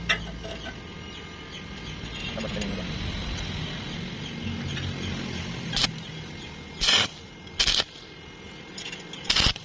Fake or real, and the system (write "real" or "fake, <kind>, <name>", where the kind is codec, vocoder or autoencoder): real